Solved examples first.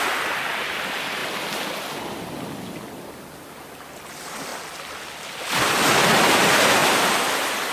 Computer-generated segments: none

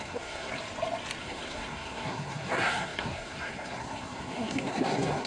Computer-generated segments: 0.0-0.5; 1.2-5.3